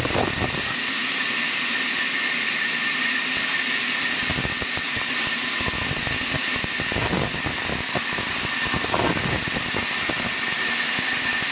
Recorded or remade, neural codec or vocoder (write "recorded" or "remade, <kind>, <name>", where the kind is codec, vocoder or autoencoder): recorded